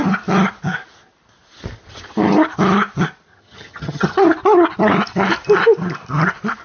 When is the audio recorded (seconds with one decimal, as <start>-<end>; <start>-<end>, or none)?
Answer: 0.0-3.3; 4.2-6.6